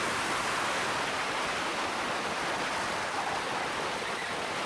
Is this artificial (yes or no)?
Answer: no